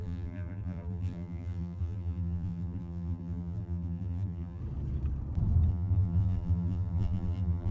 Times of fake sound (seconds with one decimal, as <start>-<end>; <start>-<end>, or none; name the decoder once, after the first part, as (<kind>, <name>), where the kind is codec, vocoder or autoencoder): 0.0-4.6 (vocoder, BigVGAN v2); 5.7-7.7